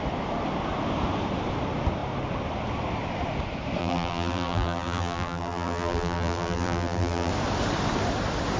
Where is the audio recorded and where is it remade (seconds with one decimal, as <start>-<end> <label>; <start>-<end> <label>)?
0.0-3.8 recorded; 3.8-7.3 remade; 7.3-8.6 recorded